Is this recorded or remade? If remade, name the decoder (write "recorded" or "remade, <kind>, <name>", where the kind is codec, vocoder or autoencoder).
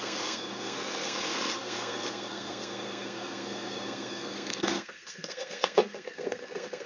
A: remade, codec, SNAC